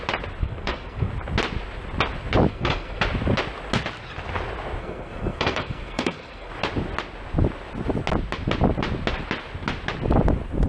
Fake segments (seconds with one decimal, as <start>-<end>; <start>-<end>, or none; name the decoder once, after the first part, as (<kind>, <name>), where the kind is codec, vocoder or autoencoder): 0.4-1.1 (codec, SNAC); 2.5-3.0; 4.8-6.5